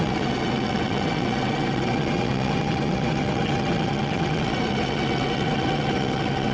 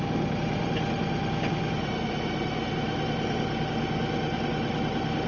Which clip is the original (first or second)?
second